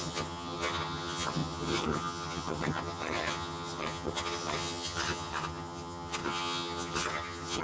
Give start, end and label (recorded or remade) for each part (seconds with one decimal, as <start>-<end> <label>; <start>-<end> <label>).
0.0-7.6 remade